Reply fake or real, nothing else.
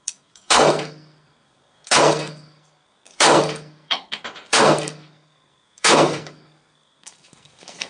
fake